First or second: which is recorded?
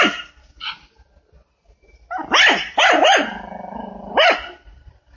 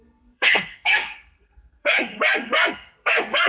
first